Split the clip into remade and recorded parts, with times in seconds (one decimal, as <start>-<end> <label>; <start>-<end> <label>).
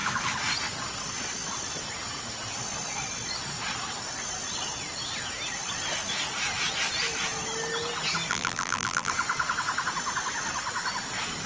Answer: 0.0-8.3 recorded; 8.3-9.1 remade; 9.1-11.5 recorded